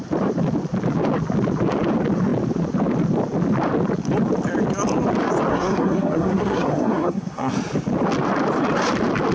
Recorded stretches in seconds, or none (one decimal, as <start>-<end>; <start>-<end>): 0.0-5.5; 7.5-9.3